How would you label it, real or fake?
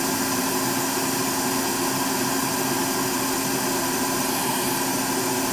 real